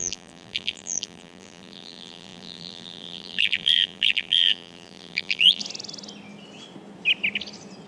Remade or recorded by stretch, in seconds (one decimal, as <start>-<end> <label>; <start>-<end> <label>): 0.0-5.6 remade; 5.6-7.9 recorded